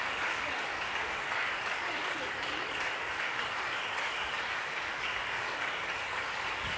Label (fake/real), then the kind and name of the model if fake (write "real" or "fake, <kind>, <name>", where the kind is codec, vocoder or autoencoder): fake, codec, DAC